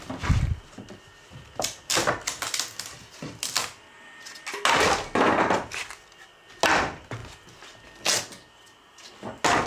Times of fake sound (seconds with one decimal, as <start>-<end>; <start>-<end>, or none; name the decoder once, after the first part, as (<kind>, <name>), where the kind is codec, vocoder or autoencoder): none